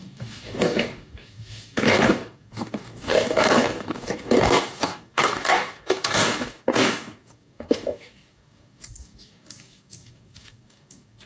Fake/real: fake